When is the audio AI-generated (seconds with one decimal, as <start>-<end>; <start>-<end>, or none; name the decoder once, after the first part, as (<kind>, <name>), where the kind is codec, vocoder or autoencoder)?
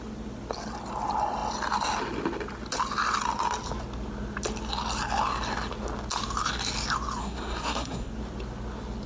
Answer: 7.2-8.1 (codec, SNAC)